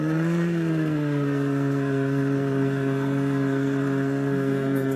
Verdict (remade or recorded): remade